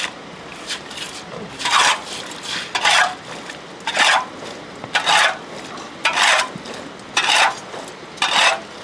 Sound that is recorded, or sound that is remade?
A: recorded